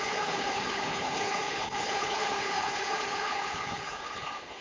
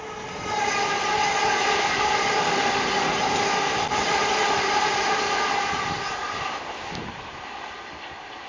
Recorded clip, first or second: second